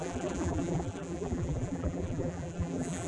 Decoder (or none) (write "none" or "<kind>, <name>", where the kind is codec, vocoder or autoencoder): vocoder, BigVGAN v2